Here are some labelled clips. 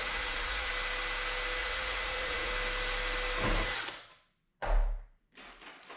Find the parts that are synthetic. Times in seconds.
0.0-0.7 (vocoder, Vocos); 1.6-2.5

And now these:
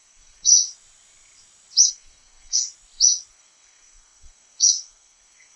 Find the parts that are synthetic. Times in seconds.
0.0-0.5 (codec, SNAC); 1.9-2.6; 3.3-5.6

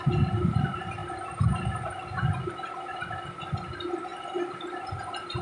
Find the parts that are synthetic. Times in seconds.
none

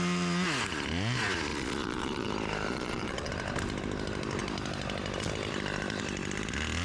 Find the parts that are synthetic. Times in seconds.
1.5-2.3 (vocoder, Vocos); 2.7-3.3

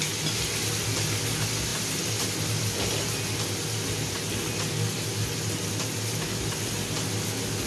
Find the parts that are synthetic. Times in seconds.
none

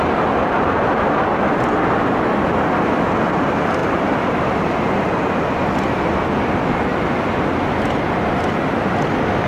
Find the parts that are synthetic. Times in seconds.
3.8-4.7 (vocoder, BigVGAN v2)

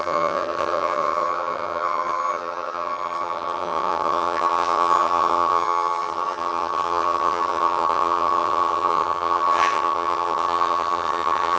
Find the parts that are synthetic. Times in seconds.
0.0-11.6 (vocoder, HiFi-GAN)

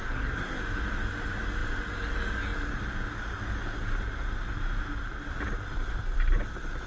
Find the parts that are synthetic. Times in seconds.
0.0-0.6 (codec, SNAC)